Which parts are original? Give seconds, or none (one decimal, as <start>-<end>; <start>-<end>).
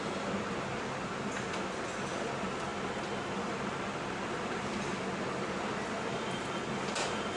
0.0-7.4